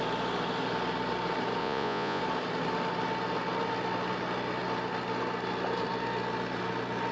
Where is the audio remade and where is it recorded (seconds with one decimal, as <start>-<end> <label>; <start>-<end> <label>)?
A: 0.0-1.6 recorded; 1.6-2.2 remade; 2.2-7.1 recorded